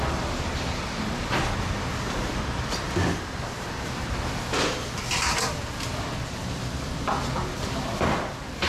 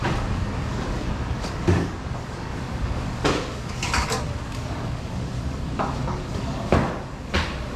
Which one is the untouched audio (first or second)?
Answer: first